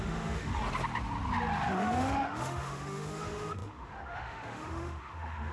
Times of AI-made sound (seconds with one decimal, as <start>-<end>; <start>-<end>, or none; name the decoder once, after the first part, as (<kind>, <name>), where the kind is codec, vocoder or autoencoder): 0.0-0.6 (autoencoder, DAC-VAE); 1.7-5.5